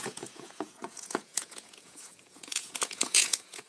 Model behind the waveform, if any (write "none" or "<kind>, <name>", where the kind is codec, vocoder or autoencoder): vocoder, Vocos